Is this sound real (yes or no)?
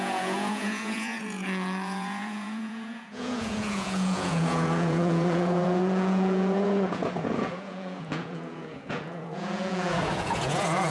no